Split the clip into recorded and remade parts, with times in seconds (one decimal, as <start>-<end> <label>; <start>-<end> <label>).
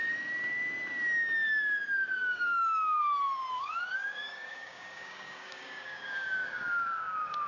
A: 0.0-2.2 recorded; 2.2-3.0 remade; 3.0-3.5 recorded; 3.5-7.5 remade